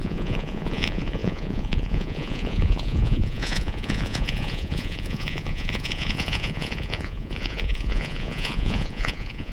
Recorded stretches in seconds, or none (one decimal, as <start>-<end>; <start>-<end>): none